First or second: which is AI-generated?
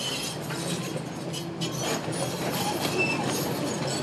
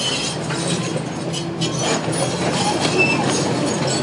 first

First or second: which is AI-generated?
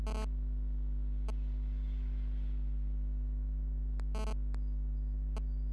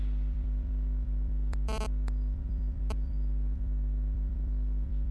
second